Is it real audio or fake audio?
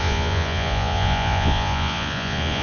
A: fake